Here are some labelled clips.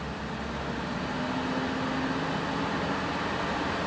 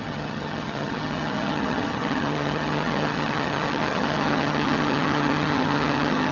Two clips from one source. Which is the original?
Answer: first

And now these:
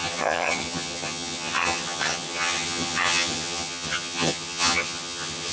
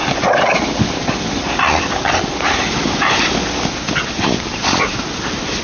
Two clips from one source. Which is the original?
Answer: second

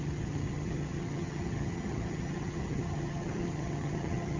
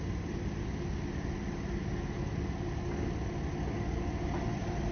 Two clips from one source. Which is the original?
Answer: second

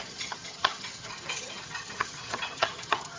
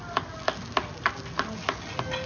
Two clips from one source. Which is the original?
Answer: second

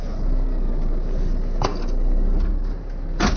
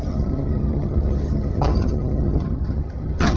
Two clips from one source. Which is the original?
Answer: first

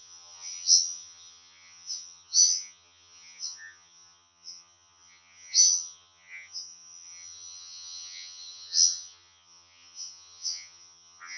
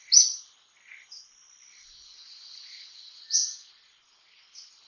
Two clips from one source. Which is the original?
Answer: second